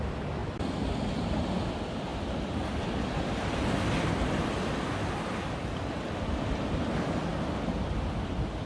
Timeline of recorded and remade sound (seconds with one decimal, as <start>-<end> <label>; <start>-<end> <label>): 0.0-8.7 recorded